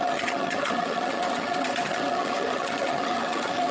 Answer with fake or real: fake